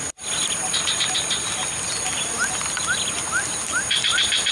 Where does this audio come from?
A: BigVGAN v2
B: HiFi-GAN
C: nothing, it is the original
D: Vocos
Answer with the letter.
C